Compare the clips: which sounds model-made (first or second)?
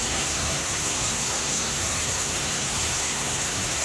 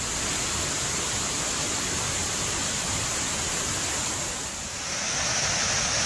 first